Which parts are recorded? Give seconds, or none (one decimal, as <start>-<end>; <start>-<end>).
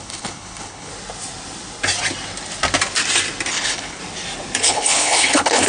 0.9-3.5; 4.0-4.6